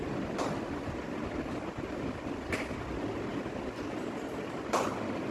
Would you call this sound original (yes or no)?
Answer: yes